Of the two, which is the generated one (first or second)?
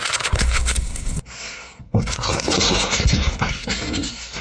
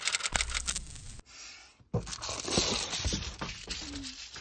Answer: first